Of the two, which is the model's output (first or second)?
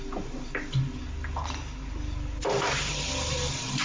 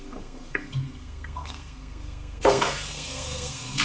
second